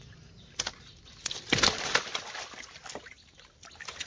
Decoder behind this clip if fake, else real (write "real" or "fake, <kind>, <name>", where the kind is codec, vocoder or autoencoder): real